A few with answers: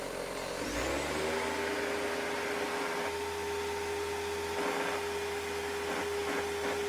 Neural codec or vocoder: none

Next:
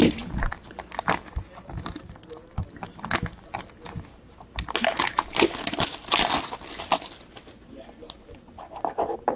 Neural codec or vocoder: none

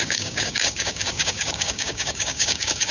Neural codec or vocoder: codec, DAC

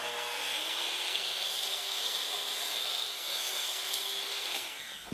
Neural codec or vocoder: codec, SNAC